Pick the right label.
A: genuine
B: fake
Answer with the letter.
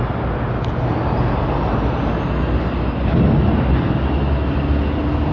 A